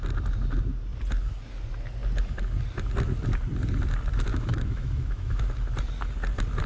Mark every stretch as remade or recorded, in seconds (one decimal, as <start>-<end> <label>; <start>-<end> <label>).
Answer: 0.0-4.3 recorded; 4.3-5.4 remade; 5.4-6.7 recorded